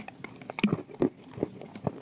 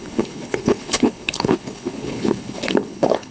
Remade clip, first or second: second